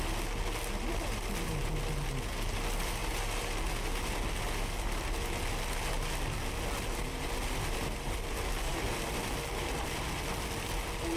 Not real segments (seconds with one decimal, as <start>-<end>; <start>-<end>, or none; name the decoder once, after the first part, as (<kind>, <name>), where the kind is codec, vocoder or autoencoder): none